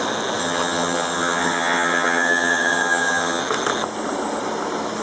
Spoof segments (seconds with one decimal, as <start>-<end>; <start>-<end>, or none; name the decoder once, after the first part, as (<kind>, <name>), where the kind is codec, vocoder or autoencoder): 0.4-3.4 (vocoder, HiFi-GAN)

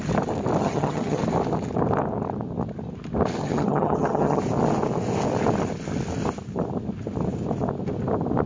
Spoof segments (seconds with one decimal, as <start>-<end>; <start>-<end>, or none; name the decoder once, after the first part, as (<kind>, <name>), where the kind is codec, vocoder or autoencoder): 0.6-1.2 (vocoder, HiFi-GAN); 3.4-4.4

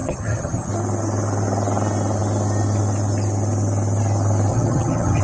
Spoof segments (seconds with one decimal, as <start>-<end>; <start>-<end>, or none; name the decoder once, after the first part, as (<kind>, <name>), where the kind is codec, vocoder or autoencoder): 0.0-0.7 (vocoder, HiFi-GAN); 4.5-5.2

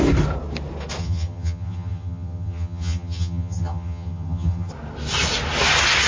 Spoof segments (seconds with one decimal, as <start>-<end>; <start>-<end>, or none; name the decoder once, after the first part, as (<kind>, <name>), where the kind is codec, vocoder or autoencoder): 1.0-4.7 (vocoder, HiFi-GAN)

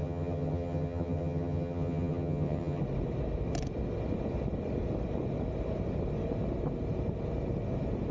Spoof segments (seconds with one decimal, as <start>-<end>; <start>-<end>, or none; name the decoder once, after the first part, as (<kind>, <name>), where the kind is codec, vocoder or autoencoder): 0.0-2.8 (vocoder, HiFi-GAN)

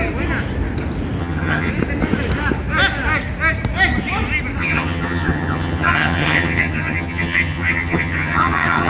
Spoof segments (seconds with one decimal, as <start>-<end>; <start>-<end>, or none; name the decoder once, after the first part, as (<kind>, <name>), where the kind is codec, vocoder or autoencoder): 1.2-1.7 (vocoder, HiFi-GAN); 4.6-8.9